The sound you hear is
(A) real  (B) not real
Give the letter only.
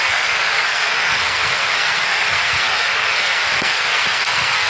B